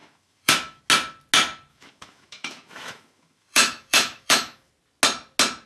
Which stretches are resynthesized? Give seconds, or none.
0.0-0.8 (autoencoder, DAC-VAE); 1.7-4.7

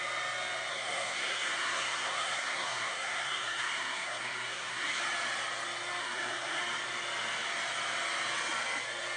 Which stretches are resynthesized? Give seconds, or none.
0.7-5.0 (codec, SNAC); 6.0-6.6

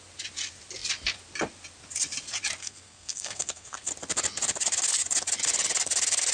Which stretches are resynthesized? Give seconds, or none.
2.6-3.9 (codec, SNAC)

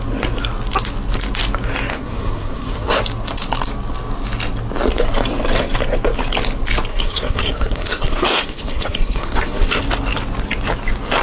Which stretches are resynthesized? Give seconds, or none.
1.9-3.0 (codec, SNAC); 6.9-9.8

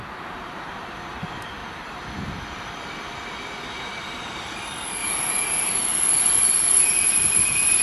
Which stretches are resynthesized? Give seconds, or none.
0.0-5.0 (vocoder, BigVGAN v2); 6.4-7.8

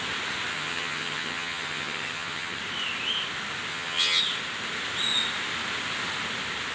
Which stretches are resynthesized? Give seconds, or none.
0.5-2.6 (vocoder, HiFi-GAN); 3.7-4.2